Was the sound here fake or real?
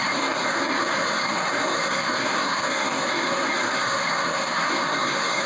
fake